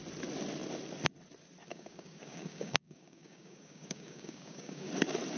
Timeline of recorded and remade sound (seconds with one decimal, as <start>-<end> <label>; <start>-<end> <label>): 0.0-1.7 recorded; 1.7-4.9 remade; 4.9-5.4 recorded